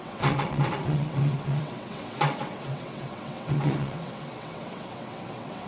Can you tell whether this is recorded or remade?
remade